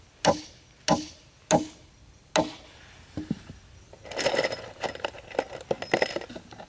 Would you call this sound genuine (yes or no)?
yes